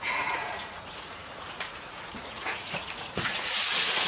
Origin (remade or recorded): remade